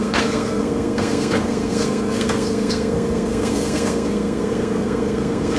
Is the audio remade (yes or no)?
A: yes